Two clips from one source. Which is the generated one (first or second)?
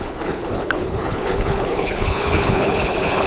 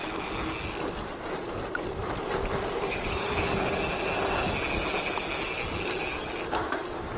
first